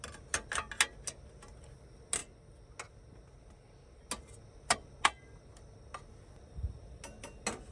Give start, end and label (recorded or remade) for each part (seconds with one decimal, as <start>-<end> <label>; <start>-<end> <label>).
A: 0.0-7.7 recorded